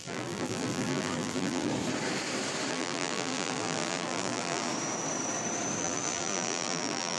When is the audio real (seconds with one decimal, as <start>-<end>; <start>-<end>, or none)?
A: 1.7-2.7; 4.7-5.8